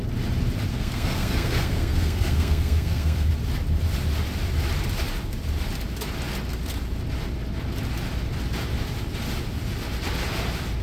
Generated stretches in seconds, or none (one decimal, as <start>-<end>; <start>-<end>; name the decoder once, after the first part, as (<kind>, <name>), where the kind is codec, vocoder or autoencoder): 0.7-3.3 (codec, SNAC)